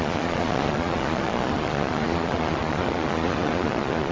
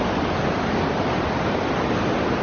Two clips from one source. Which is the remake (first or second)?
first